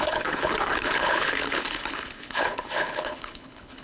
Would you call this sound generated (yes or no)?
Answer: yes